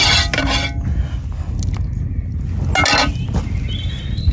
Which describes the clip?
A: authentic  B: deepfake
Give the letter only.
A